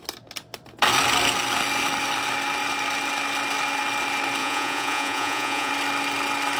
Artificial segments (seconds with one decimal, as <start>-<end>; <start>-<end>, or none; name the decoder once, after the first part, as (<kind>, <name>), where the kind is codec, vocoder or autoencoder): 4.4-5.7 (vocoder, Vocos)